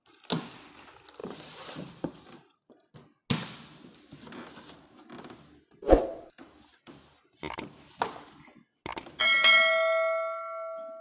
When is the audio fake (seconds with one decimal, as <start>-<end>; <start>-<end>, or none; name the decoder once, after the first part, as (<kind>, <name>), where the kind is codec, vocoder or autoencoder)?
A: 1.2-2.9 (vocoder, BigVGAN v2)